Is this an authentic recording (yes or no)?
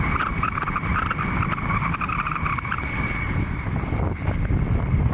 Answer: yes